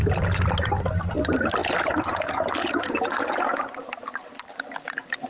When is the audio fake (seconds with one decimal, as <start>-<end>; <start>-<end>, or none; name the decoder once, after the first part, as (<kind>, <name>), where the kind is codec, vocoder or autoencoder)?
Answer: 1.6-3.4 (vocoder, BigVGAN v2); 4.0-4.5